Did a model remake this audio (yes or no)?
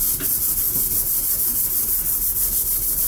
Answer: no